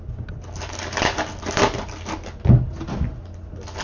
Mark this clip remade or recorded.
recorded